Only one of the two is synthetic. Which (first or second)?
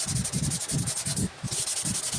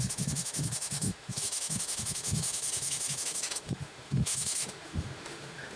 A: second